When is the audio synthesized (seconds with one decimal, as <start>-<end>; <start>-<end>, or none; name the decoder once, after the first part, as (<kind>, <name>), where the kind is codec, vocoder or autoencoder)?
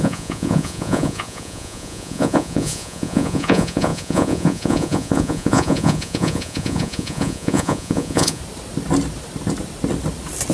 0.0-8.4 (vocoder, Vocos)